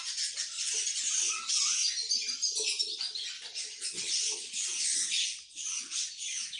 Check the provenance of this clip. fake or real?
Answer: real